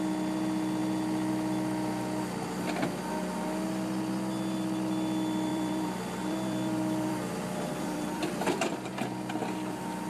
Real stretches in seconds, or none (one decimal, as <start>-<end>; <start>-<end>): 0.0-5.5; 8.9-10.1